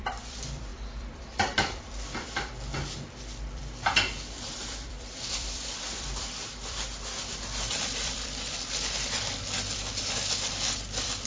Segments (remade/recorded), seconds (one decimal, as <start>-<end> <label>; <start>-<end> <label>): 0.0-11.3 remade